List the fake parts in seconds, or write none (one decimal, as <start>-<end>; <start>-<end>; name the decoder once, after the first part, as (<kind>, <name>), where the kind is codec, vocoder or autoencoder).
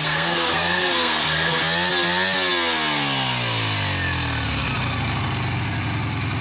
0.0-1.6 (codec, SNAC)